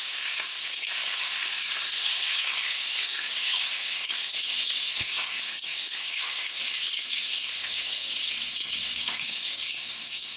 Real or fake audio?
fake